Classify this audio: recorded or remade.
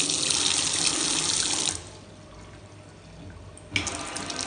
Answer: recorded